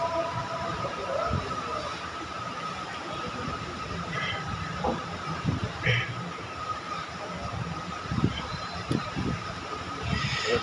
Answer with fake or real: fake